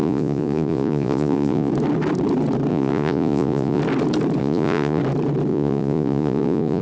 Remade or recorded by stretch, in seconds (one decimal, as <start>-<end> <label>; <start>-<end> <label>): 0.0-1.7 remade; 1.7-2.7 recorded; 2.7-3.8 remade; 3.8-4.4 recorded; 4.4-5.0 remade; 5.0-5.5 recorded; 5.5-6.8 remade